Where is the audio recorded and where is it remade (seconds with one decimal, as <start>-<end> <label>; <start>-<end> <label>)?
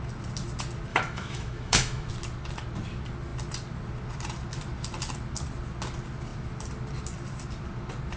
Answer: 0.0-0.9 recorded; 0.9-2.1 remade; 2.1-8.2 recorded